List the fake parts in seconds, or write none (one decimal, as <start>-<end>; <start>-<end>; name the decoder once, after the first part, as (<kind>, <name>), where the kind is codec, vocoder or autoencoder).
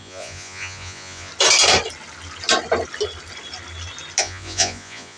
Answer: 0.0-1.3 (vocoder, Vocos); 4.2-5.2